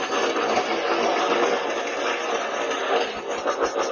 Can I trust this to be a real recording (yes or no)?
yes